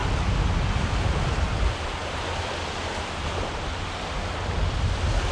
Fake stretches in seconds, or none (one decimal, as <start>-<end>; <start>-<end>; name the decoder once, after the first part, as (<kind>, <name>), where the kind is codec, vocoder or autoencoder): none